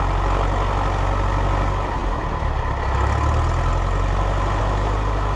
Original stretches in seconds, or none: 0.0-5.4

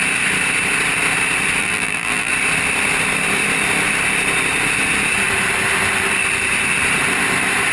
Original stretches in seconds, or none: 0.0-1.6; 2.3-7.7

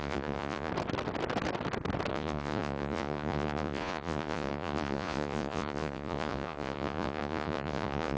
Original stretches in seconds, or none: 0.7-2.1

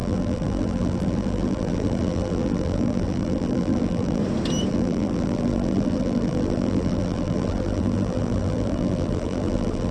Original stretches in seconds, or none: 4.2-4.7